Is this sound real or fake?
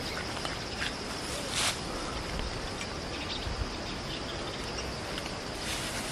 real